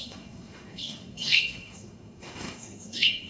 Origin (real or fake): fake